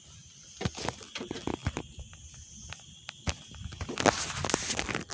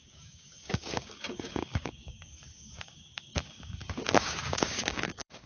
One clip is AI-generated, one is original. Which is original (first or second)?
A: first